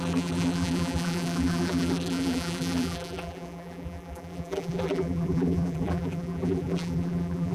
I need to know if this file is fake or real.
fake